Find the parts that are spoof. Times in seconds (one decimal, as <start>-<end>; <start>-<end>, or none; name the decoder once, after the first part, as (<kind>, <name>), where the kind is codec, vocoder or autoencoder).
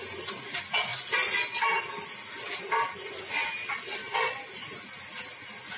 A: none